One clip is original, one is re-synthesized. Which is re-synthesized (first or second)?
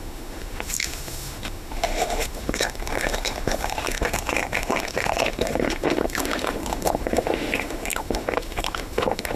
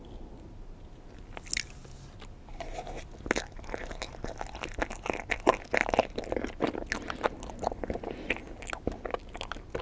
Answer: first